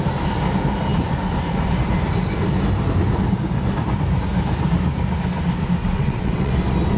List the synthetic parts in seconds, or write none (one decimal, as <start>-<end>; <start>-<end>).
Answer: 5.8-6.5